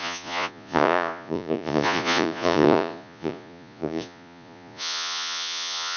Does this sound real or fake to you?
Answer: fake